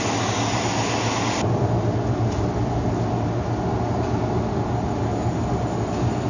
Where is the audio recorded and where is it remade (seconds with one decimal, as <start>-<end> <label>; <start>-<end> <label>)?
0.0-5.1 recorded; 5.1-6.3 remade

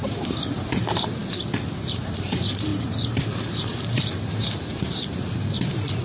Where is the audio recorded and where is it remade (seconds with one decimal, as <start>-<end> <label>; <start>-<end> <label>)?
0.0-1.2 remade; 1.2-1.8 recorded; 1.8-6.0 remade